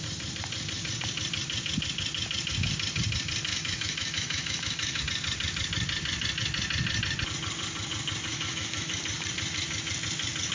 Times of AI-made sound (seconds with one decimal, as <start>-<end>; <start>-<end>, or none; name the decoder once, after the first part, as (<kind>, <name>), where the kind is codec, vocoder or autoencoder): 3.5-5.0 (autoencoder, DAC-VAE); 8.3-9.0